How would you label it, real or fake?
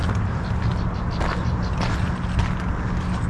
real